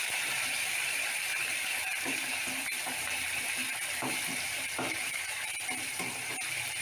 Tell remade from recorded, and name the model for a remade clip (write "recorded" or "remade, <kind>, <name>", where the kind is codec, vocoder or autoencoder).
remade, vocoder, BigVGAN v2